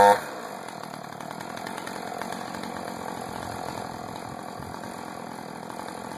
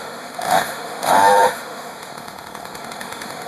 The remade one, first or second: second